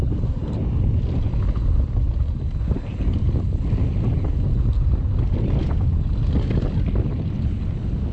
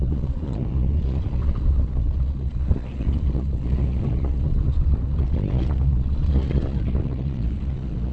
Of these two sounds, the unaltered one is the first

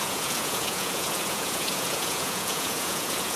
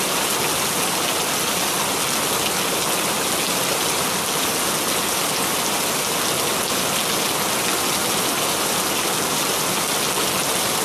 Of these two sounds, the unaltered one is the second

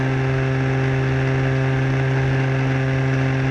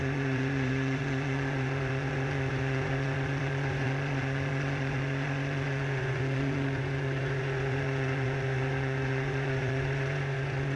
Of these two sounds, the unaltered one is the first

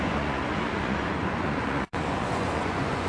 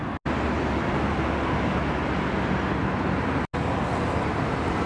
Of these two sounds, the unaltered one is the second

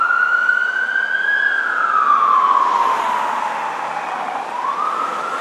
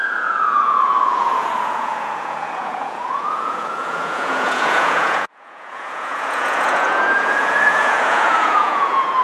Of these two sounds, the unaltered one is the first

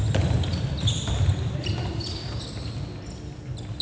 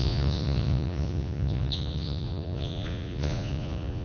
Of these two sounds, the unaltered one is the first